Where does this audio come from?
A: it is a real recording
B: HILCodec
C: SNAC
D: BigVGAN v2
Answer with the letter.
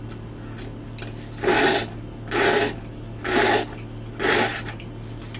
A